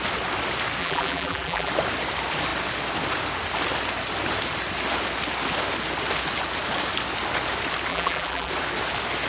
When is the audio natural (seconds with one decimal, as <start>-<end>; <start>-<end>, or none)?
0.0-0.8; 1.7-7.9; 8.5-9.3